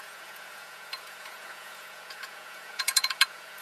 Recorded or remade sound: remade